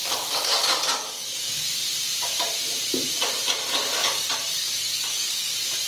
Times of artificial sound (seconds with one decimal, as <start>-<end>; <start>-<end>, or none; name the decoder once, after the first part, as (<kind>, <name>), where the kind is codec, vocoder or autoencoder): 0.0-1.7 (codec, DAC); 4.0-5.5